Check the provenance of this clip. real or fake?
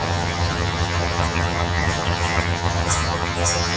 fake